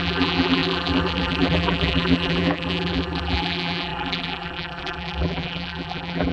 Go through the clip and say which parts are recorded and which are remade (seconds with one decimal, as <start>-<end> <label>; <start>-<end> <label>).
0.0-6.3 remade